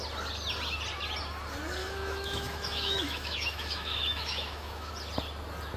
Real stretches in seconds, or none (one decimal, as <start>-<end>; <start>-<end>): 0.0-1.8; 4.9-5.8